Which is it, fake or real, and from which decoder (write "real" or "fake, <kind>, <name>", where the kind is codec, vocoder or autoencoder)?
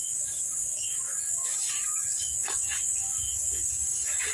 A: fake, codec, DAC